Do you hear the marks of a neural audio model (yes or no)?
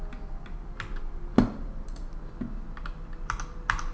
no